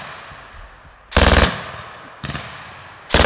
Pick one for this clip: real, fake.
real